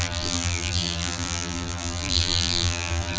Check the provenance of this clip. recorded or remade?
remade